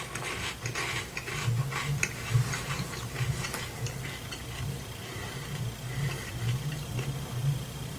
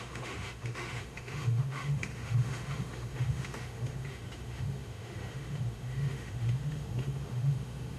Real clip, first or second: first